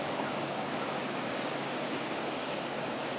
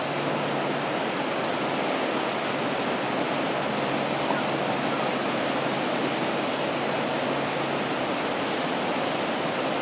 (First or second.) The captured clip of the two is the second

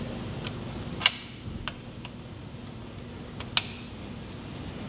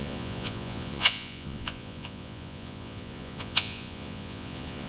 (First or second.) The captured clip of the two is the first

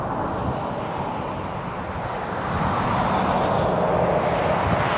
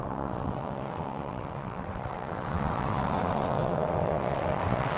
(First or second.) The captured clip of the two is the first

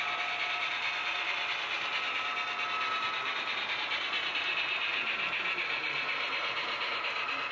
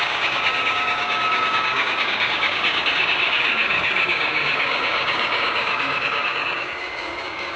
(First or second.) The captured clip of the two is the first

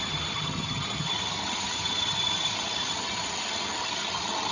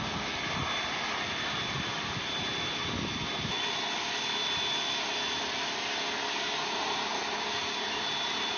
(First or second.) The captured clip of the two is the second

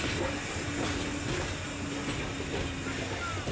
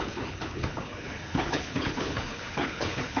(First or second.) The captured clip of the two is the first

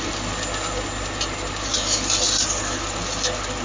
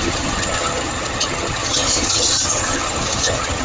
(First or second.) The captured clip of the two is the first